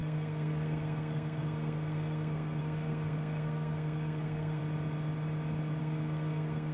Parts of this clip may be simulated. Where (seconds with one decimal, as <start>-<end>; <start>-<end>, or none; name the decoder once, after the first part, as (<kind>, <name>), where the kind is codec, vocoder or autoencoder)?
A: 0.0-4.6 (codec, SNAC); 5.8-6.7